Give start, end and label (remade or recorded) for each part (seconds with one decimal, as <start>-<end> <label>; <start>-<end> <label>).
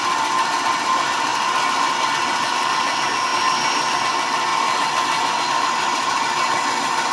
0.0-7.1 recorded